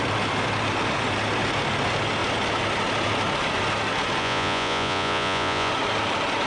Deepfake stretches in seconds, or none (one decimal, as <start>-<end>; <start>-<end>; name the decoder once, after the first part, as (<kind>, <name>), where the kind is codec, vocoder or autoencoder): 4.2-5.7 (vocoder, Vocos)